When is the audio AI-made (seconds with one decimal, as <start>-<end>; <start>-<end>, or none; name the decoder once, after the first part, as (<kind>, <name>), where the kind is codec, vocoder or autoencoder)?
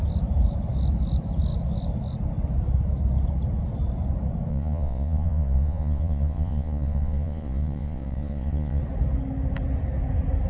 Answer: 4.5-8.8 (vocoder, Vocos)